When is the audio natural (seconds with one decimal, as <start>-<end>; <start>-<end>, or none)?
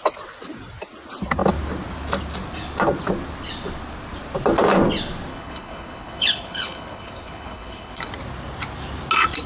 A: 0.0-5.3; 8.1-9.5